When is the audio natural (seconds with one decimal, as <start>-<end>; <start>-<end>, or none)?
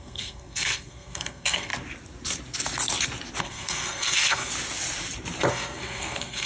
1.7-3.4; 4.5-5.5